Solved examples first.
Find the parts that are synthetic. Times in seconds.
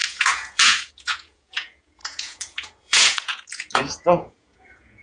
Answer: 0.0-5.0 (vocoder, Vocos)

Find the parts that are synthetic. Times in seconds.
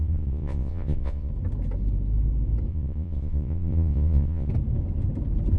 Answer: 0.0-1.3 (vocoder, Vocos); 2.7-4.5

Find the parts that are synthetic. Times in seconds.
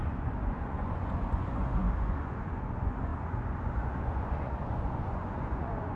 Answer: 0.0-6.0 (vocoder, Vocos)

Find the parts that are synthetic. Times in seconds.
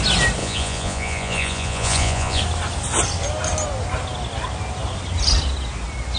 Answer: 0.4-2.4 (vocoder, Vocos)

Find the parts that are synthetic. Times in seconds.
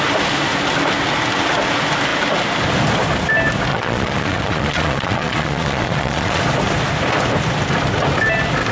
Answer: 3.7-6.4 (vocoder, Vocos)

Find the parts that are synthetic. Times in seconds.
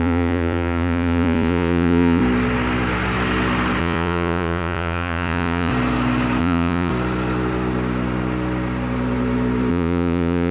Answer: 0.0-2.2 (vocoder, Vocos); 3.8-5.7; 6.4-6.9; 9.7-10.5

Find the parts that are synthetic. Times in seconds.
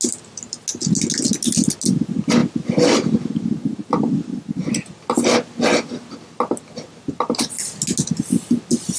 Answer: none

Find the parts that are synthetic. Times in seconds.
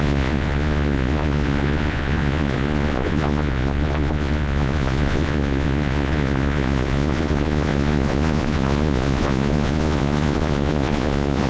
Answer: 0.0-11.5 (vocoder, Vocos)